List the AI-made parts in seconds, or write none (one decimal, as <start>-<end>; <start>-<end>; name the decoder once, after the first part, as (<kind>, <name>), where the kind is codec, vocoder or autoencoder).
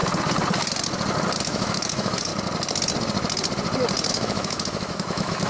1.4-2.3 (autoencoder, DAC-VAE); 4.1-5.5